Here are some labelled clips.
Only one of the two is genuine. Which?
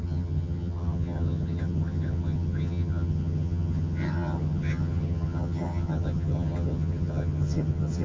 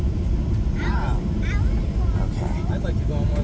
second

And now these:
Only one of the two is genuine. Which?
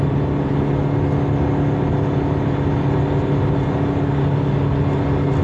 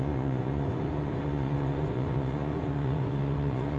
first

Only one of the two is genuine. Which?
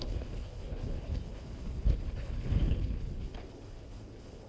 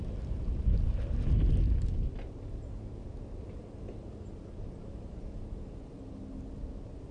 second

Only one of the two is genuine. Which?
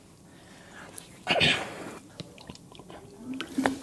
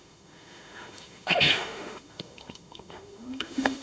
first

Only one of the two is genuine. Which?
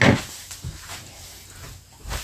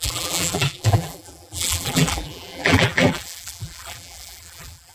first